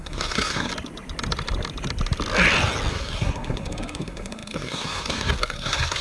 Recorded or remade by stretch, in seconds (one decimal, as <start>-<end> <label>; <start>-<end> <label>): 0.0-0.7 remade; 0.7-2.9 recorded; 2.9-6.0 remade